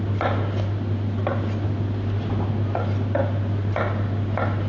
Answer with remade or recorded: recorded